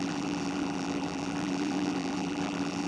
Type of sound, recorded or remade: remade